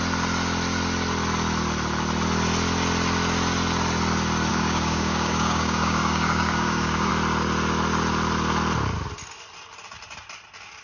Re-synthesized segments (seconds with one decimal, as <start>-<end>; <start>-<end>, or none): 4.5-7.1